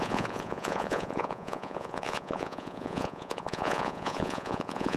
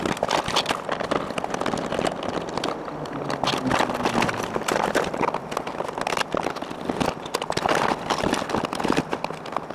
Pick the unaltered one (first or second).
second